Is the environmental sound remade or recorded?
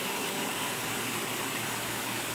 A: remade